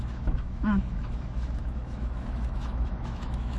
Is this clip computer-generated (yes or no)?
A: yes